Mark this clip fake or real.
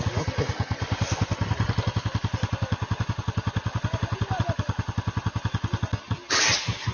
real